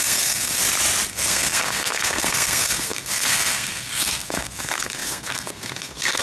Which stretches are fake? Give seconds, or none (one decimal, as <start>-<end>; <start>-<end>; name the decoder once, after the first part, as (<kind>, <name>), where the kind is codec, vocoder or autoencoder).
0.0-0.6 (codec, SNAC); 1.1-6.2

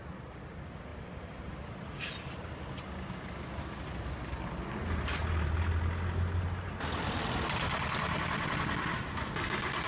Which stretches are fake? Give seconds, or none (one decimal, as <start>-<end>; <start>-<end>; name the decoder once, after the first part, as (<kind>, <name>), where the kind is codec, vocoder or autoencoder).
0.9-1.5 (vocoder, BigVGAN v2)

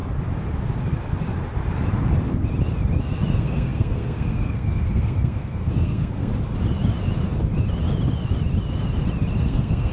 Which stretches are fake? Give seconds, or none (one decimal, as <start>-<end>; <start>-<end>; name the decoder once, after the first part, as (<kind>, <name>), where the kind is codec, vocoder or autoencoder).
3.3-6.3 (codec, SNAC); 9.4-9.9

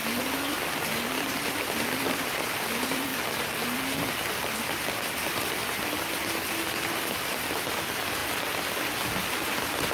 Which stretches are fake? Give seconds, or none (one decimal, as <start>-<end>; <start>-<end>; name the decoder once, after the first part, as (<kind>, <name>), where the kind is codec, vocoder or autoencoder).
0.9-3.1 (vocoder, BigVGAN v2); 4.3-5.6; 6.6-8.2; 9.2-9.9

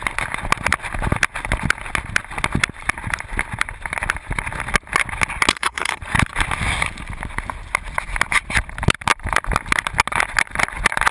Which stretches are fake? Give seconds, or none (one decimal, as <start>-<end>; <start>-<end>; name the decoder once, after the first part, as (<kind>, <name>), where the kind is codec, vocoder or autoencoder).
5.5-6.0 (codec, SNAC)

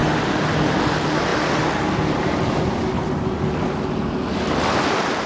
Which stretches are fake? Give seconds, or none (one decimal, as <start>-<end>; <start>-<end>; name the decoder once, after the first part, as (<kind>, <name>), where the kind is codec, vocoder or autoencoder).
none